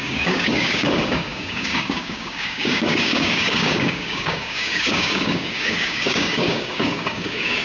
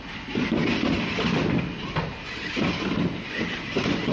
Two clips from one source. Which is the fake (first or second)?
first